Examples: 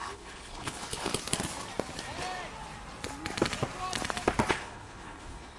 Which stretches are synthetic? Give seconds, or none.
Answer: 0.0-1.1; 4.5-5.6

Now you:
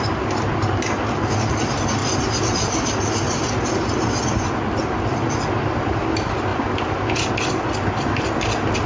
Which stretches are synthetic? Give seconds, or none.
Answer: none

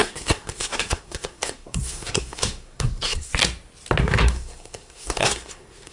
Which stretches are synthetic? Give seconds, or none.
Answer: 0.0-3.3; 4.0-5.9